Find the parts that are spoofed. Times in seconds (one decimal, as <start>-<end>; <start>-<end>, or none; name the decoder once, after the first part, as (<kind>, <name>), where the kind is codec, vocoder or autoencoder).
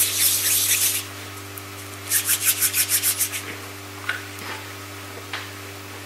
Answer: none